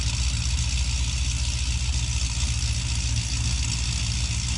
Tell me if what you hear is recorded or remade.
recorded